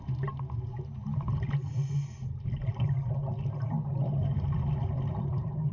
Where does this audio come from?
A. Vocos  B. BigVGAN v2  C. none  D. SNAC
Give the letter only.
C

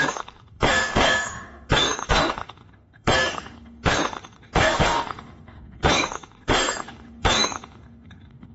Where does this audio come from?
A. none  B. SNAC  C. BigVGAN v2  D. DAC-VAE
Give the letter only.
D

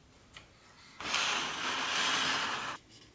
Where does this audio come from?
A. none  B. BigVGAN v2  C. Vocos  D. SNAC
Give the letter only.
A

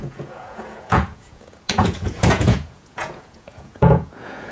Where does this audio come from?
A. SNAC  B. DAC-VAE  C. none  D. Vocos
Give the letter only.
D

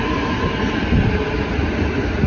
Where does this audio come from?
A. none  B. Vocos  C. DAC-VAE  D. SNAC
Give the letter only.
A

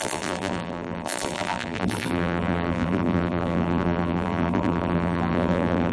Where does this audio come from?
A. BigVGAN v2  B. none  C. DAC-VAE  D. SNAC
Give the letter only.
A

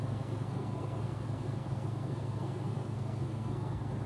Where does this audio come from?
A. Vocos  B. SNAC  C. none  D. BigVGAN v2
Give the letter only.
B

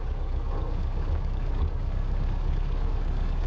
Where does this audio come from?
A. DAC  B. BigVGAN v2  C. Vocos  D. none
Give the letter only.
A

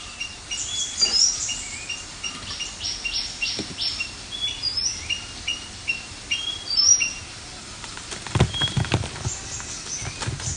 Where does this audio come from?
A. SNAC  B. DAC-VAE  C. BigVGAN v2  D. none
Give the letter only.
D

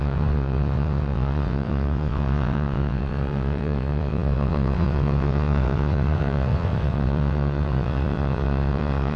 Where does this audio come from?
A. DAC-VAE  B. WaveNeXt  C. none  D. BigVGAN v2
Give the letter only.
B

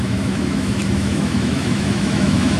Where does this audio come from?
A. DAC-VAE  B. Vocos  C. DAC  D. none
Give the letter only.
A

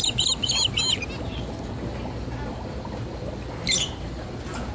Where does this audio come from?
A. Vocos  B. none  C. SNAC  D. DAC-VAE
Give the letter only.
B